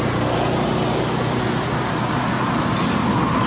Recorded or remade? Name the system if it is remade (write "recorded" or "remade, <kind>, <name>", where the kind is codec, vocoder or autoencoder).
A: recorded